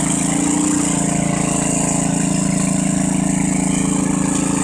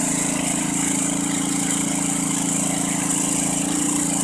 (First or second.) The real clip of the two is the first